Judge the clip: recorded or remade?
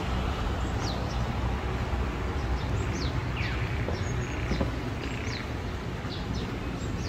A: recorded